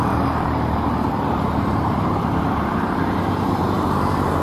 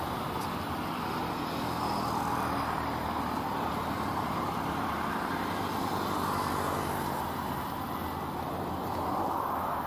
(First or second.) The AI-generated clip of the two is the first